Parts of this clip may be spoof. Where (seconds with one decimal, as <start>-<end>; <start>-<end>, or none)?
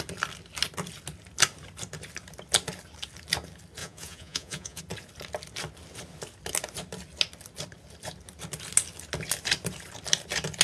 3.8-4.8